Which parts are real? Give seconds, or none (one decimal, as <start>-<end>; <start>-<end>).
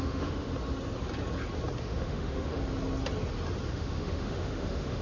0.5-1.8; 2.6-3.7